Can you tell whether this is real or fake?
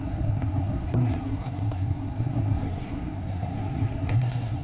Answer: fake